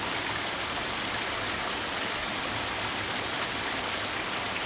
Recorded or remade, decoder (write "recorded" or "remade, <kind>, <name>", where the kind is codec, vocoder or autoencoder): recorded